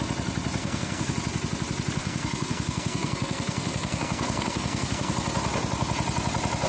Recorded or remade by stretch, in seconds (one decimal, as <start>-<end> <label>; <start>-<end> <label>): 0.0-0.6 recorded; 0.6-1.1 remade; 1.1-2.0 recorded; 2.0-5.1 remade; 5.1-6.7 recorded